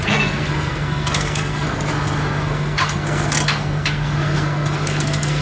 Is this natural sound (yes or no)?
no